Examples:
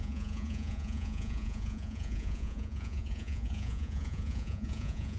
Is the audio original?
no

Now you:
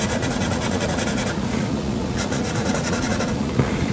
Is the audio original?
no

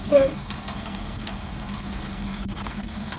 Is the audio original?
no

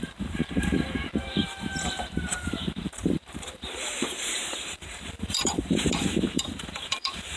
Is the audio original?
no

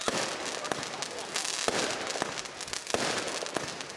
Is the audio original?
yes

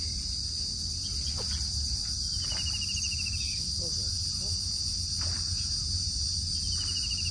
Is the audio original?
yes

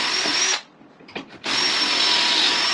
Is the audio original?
yes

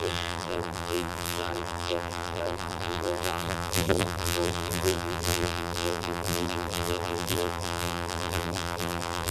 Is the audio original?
no